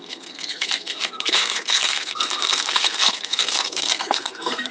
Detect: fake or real fake